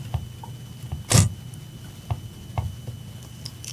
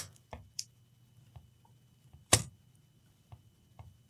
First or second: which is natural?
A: first